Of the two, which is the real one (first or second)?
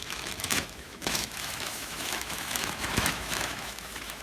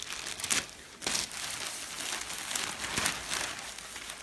second